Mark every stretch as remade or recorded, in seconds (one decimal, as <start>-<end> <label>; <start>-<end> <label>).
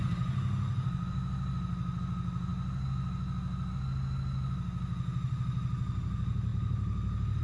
0.0-7.4 recorded